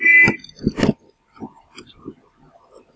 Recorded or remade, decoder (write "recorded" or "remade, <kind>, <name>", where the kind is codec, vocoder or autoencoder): recorded